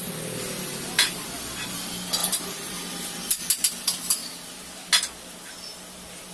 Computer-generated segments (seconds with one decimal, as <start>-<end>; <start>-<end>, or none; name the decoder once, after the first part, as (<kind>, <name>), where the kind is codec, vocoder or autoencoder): 2.2-3.3 (vocoder, BigVGAN v2)